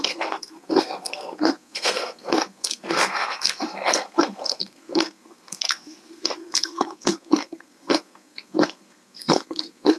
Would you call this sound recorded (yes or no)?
no